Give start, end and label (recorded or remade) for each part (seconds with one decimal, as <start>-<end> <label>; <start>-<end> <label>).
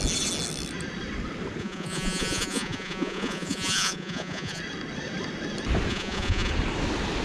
0.0-1.6 recorded; 1.6-4.6 remade; 4.6-5.9 recorded; 5.9-6.5 remade; 6.5-7.2 recorded